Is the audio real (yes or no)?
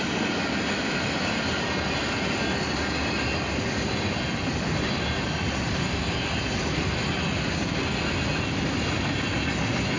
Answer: yes